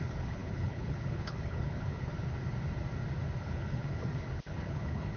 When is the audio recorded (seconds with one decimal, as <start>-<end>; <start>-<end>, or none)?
2.1-3.4